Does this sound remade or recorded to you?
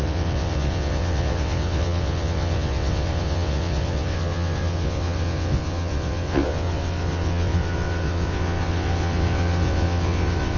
remade